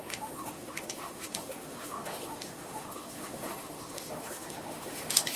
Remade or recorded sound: remade